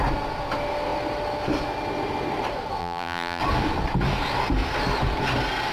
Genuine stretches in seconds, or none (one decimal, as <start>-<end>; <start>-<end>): 0.0-2.8; 3.4-5.7